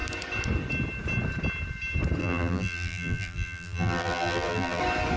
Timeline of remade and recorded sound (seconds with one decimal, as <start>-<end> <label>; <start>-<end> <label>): 0.0-2.2 recorded; 2.2-4.8 remade; 4.8-5.2 recorded